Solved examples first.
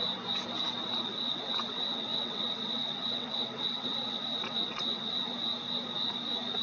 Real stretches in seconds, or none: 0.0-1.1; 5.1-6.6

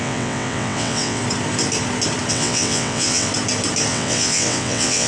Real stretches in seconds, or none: 1.2-2.3; 3.3-3.9

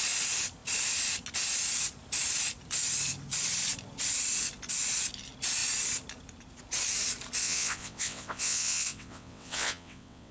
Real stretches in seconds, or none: 0.0-7.4

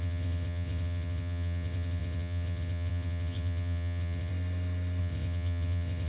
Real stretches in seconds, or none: 4.3-5.0

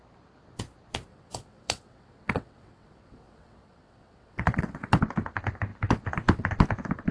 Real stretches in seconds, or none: 0.0-1.1; 5.0-7.1

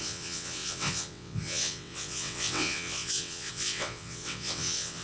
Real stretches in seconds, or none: none